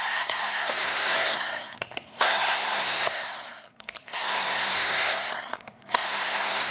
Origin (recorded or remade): remade